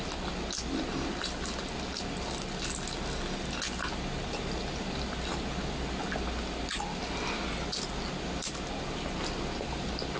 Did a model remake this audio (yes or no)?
no